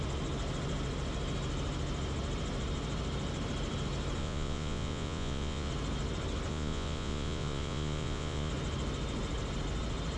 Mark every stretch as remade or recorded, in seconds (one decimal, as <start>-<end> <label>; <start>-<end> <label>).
0.0-4.2 recorded; 4.2-5.7 remade; 5.7-6.5 recorded; 6.5-8.5 remade; 8.5-10.2 recorded